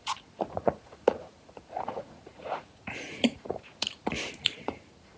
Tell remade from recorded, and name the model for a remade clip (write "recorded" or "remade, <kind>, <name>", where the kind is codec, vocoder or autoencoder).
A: remade, vocoder, Vocos